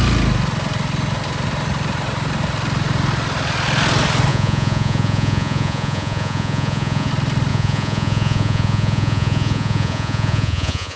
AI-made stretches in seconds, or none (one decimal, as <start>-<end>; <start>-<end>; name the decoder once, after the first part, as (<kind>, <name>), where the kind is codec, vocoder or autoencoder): 4.3-7.1 (vocoder, Vocos); 7.5-11.0